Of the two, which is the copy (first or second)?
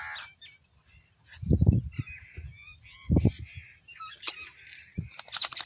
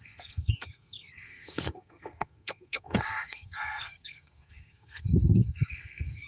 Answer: second